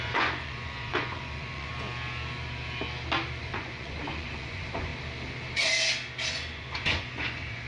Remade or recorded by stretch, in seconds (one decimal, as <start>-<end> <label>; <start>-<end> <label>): 0.0-1.7 remade; 1.7-3.4 recorded; 3.4-4.9 remade; 4.9-6.3 recorded; 6.3-7.7 remade